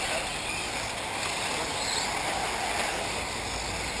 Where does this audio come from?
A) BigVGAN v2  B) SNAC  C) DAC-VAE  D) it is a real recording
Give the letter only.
D